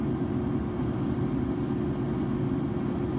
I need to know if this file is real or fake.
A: real